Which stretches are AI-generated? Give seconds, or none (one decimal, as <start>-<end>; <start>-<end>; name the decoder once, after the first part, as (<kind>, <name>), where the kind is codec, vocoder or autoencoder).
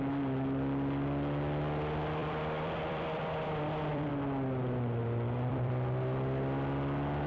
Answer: 2.2-4.1 (vocoder, BigVGAN v2); 5.0-5.7